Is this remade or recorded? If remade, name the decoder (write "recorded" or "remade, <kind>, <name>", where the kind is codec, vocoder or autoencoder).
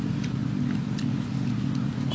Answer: recorded